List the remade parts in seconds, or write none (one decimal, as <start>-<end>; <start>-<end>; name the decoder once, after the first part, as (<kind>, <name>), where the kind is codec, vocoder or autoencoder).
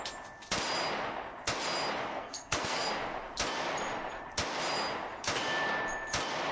2.1-2.9 (codec, SNAC)